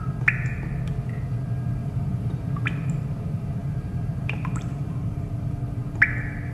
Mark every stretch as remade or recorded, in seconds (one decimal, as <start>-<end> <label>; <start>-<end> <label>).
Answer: 0.0-1.8 recorded; 1.8-2.5 remade; 2.5-3.6 recorded; 3.6-5.5 remade; 5.5-6.5 recorded